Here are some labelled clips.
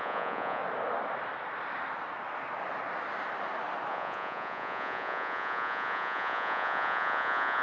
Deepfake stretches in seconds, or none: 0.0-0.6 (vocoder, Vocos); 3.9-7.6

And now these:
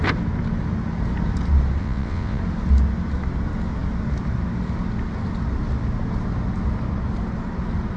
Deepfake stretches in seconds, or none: 1.8-2.4 (vocoder, WaveNeXt)

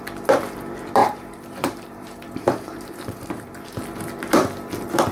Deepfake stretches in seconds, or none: 1.0-3.8 (vocoder, BigVGAN v2)

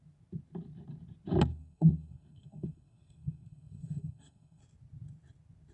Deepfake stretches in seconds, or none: 1.5-4.6 (codec, SNAC)